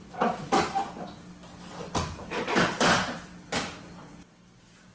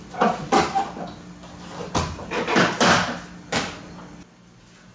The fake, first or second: first